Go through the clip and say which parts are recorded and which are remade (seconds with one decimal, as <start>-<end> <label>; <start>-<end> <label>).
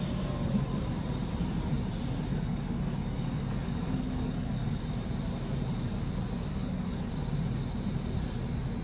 0.0-2.3 recorded; 2.3-4.8 remade; 4.8-6.5 recorded; 6.5-7.1 remade; 7.1-8.8 recorded